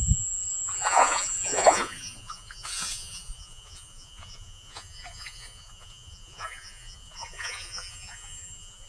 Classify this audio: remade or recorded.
remade